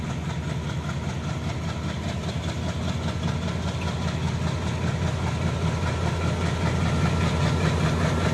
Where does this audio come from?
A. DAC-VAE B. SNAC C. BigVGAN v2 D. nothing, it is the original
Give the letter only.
D